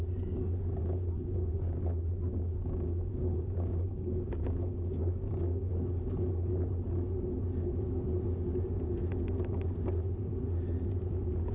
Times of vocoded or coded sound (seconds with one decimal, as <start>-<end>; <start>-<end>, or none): 0.8-1.8; 2.3-5.7